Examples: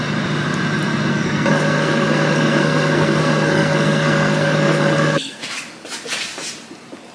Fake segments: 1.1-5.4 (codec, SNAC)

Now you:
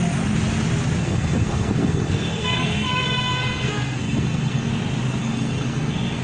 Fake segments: 1.0-4.7 (codec, SNAC); 5.2-6.2

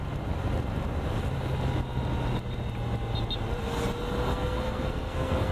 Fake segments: 4.2-5.5 (codec, SNAC)

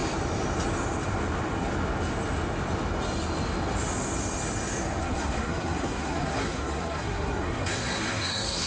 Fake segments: 5.0-8.7 (codec, SNAC)